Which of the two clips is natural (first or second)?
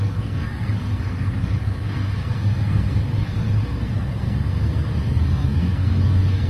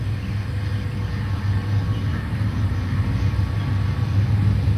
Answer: second